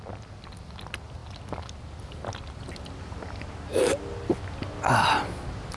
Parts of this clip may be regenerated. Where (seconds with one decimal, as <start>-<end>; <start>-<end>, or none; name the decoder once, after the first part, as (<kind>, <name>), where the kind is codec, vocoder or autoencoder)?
none